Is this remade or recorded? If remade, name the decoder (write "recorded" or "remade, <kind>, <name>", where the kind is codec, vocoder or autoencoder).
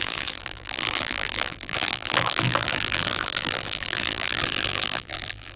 remade, vocoder, BigVGAN v2